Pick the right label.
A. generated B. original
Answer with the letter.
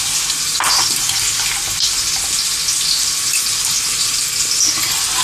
B